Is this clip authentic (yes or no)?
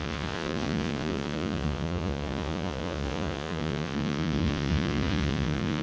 no